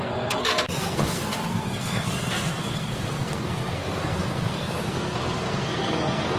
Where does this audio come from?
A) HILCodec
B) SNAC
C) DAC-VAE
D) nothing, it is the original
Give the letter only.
B